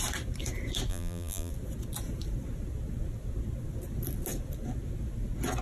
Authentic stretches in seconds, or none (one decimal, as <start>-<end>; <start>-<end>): 0.0-0.9; 1.5-5.6